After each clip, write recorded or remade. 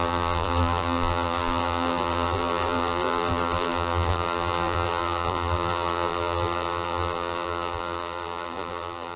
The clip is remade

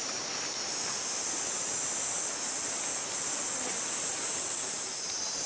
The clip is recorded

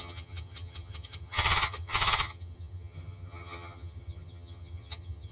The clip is remade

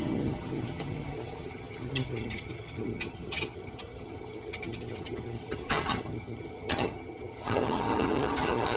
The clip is remade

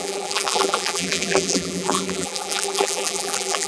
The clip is remade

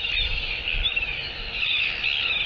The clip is recorded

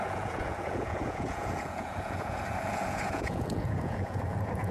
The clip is remade